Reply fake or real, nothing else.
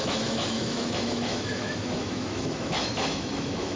fake